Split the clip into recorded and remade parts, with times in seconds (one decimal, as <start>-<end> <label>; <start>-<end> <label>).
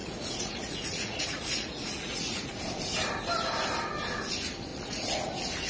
0.0-2.6 remade; 2.6-4.7 recorded; 4.7-5.3 remade; 5.3-5.7 recorded